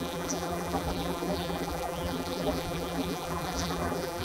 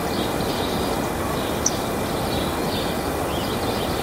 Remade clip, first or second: first